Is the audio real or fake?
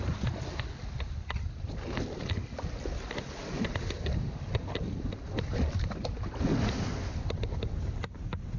real